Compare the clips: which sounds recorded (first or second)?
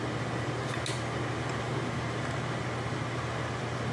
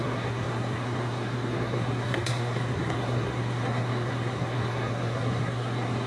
first